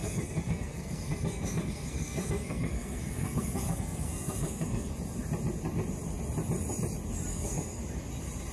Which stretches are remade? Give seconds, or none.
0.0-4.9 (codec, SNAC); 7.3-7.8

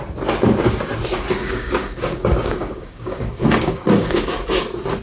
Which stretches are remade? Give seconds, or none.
1.4-4.4 (codec, DAC)

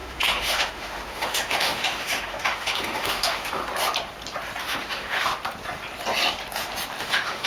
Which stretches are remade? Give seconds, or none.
0.0-3.6 (autoencoder, DAC-VAE); 4.6-5.3; 7.0-7.5